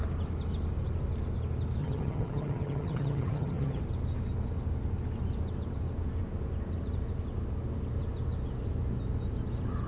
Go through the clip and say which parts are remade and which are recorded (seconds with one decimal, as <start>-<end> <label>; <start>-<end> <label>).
0.0-1.8 recorded; 1.8-3.8 remade; 3.8-9.9 recorded